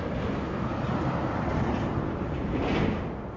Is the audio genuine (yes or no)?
yes